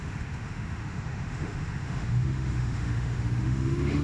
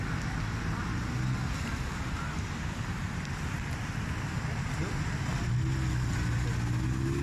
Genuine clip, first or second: second